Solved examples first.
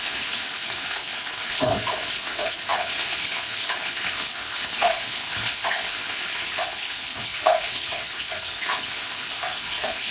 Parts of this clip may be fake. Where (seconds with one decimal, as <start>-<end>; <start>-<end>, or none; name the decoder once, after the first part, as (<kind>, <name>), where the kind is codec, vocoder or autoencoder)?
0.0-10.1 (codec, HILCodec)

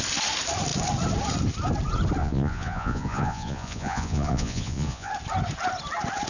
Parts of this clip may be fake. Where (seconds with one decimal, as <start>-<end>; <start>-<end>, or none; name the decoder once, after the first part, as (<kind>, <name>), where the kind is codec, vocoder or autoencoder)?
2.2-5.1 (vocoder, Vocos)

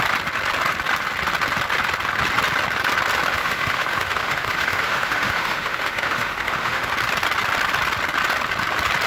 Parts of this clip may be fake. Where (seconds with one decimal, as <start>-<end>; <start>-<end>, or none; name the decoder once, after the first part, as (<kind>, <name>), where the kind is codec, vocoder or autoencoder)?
3.3-6.9 (autoencoder, DAC-VAE)